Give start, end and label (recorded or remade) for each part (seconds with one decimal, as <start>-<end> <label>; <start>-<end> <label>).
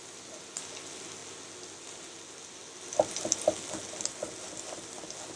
0.0-5.4 recorded